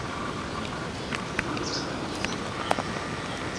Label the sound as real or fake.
real